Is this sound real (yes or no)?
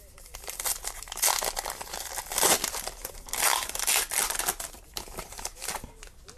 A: yes